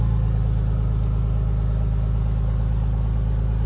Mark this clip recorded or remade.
recorded